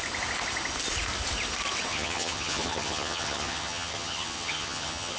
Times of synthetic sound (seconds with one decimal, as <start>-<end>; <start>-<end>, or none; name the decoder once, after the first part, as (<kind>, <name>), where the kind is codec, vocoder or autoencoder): 1.9-5.2 (vocoder, HiFi-GAN)